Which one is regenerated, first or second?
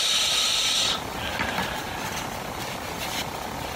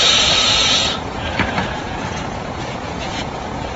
second